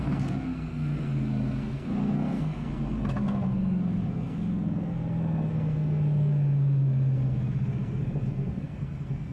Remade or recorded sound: remade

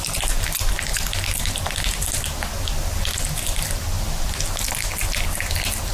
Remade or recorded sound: recorded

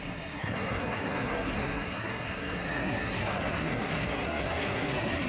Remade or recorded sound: remade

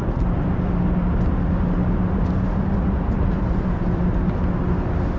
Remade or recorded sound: recorded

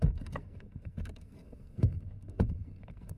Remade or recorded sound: remade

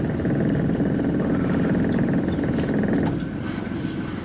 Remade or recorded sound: recorded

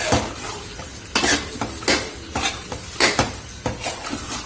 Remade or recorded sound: recorded